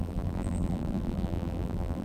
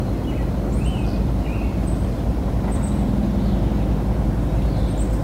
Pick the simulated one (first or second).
first